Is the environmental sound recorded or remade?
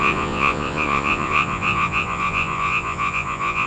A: remade